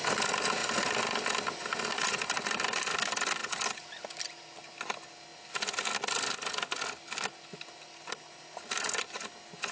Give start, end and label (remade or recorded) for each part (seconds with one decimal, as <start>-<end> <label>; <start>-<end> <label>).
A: 0.0-9.7 recorded